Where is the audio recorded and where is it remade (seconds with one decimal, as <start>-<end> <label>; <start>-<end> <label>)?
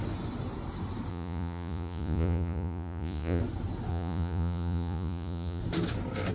0.0-1.1 recorded; 1.1-3.4 remade; 3.4-3.9 recorded; 3.9-5.6 remade; 5.6-6.3 recorded